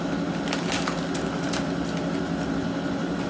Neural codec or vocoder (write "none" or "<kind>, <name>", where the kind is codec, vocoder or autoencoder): none